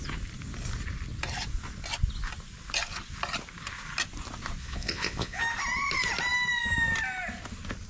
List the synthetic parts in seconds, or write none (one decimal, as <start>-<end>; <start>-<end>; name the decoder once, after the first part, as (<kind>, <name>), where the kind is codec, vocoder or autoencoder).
4.6-5.4 (vocoder, Vocos)